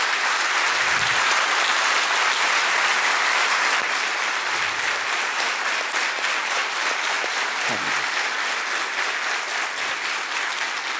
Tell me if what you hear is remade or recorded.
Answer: recorded